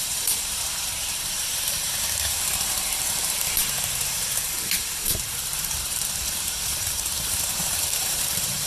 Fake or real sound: fake